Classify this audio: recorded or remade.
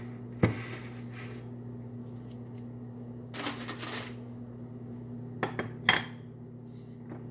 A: recorded